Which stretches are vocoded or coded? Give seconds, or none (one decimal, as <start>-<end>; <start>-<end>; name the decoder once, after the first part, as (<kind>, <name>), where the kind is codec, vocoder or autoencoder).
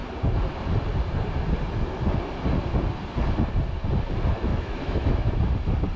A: 4.5-5.4 (autoencoder, DAC-VAE)